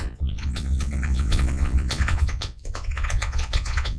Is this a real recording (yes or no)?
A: no